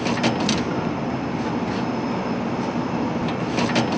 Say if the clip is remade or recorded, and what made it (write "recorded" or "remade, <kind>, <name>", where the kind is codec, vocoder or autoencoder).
recorded